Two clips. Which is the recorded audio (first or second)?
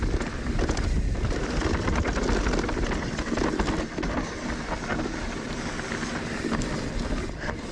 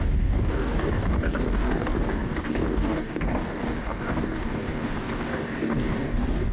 first